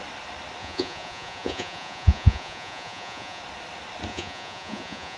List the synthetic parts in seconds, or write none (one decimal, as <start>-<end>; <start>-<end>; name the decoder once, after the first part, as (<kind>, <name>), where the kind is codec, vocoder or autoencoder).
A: 0.6-3.4 (vocoder, Vocos); 4.1-5.2